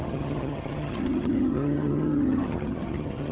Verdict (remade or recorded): remade